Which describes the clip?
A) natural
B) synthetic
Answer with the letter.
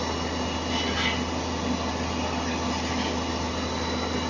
A